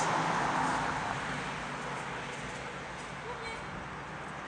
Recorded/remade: recorded